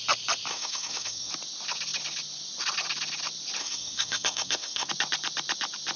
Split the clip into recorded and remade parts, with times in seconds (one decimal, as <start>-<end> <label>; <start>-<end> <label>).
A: 0.0-0.5 recorded; 0.5-1.3 remade; 1.3-3.6 recorded; 3.6-4.9 remade; 4.9-6.0 recorded

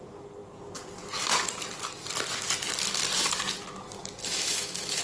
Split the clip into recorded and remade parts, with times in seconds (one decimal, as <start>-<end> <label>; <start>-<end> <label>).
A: 0.0-4.2 recorded; 4.2-5.0 remade